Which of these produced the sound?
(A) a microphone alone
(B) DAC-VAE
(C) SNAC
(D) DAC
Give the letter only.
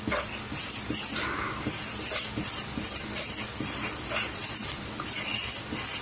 A